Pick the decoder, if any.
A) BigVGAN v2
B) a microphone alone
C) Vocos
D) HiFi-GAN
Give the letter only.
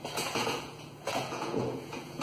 C